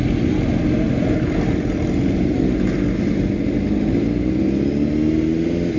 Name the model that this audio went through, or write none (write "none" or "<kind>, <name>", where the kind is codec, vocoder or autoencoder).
none